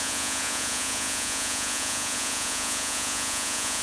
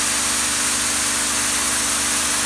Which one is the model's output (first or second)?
first